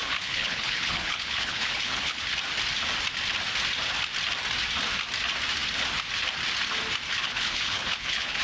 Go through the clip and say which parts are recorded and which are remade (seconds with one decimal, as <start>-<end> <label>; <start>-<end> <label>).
0.0-2.2 remade; 2.2-7.2 recorded; 7.2-8.4 remade